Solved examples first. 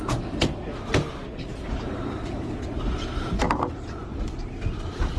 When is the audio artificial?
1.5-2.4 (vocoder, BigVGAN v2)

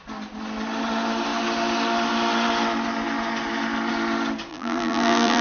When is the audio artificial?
4.5-5.4 (vocoder, BigVGAN v2)

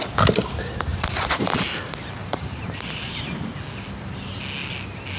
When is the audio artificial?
0.9-1.5 (vocoder, BigVGAN v2); 2.2-3.3

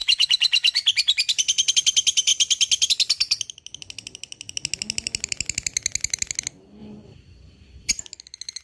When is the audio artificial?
0.0-1.7 (vocoder, BigVGAN v2); 6.8-7.9

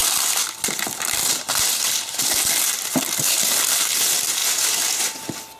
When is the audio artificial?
0.0-4.4 (vocoder, BigVGAN v2)